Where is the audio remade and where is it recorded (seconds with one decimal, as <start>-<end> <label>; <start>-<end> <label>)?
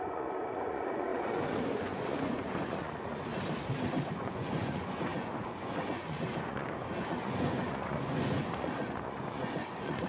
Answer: 0.0-3.3 remade; 3.3-4.1 recorded; 4.1-10.1 remade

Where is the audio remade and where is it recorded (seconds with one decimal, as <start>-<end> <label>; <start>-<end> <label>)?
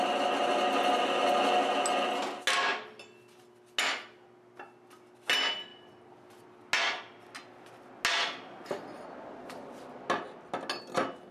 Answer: 0.0-11.3 recorded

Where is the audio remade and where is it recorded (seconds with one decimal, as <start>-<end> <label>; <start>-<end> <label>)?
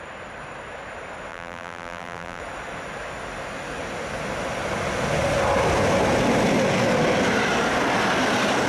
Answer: 0.0-1.3 recorded; 1.3-2.4 remade; 2.4-8.7 recorded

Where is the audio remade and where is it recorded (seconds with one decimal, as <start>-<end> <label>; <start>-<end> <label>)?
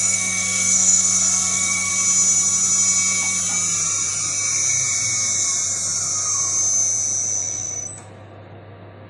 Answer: 0.0-1.9 remade; 1.9-9.1 recorded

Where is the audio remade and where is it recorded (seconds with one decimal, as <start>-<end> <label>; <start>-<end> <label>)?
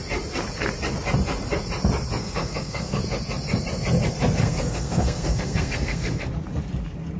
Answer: 0.0-2.2 recorded; 2.2-3.0 remade; 3.0-4.4 recorded; 4.4-6.3 remade; 6.3-7.2 recorded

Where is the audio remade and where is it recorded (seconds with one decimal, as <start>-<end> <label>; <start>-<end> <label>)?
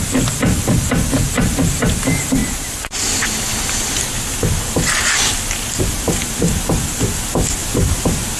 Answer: 0.0-2.4 recorded; 2.4-3.0 remade; 3.0-3.5 recorded; 3.5-5.3 remade; 5.3-7.6 recorded; 7.6-8.4 remade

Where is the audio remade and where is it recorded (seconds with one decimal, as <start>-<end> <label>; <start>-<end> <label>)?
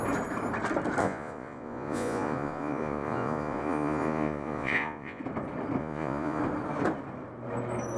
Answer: 0.0-1.0 recorded; 1.0-5.2 remade; 5.2-5.8 recorded; 5.8-6.4 remade; 6.4-8.0 recorded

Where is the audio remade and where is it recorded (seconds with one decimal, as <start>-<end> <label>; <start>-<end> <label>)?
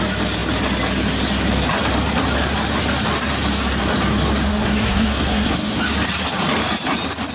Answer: 0.0-4.5 recorded; 4.5-5.8 remade; 5.8-7.3 recorded